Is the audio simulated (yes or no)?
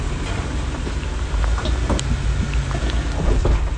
no